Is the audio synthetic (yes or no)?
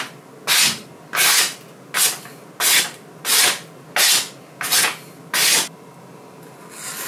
no